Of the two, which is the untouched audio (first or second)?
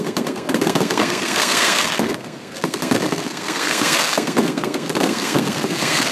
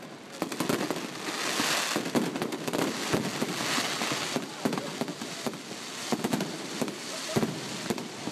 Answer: second